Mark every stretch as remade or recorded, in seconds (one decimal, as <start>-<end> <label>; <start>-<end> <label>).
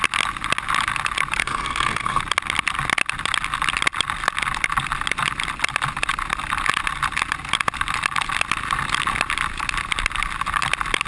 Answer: 0.0-1.4 recorded; 1.4-2.2 remade; 2.2-11.1 recorded